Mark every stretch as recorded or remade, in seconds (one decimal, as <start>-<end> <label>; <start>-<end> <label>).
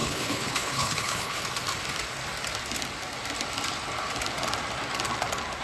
0.0-1.4 remade; 1.4-5.6 recorded